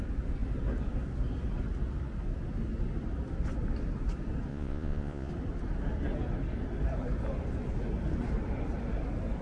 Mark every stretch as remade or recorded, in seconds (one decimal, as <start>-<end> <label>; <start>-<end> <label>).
0.0-4.5 recorded; 4.5-5.3 remade; 5.3-9.4 recorded